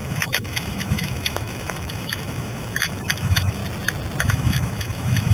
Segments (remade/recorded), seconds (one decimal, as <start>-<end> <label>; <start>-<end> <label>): 0.0-3.6 remade; 3.6-4.2 recorded; 4.2-5.3 remade